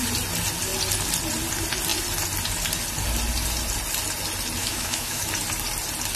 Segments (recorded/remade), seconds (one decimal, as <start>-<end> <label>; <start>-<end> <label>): 0.0-4.6 recorded; 4.6-5.3 remade; 5.3-6.2 recorded